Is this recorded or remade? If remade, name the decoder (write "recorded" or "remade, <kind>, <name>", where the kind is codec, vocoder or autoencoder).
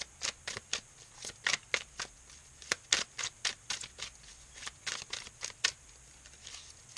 recorded